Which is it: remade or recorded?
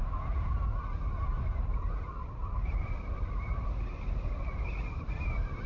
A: recorded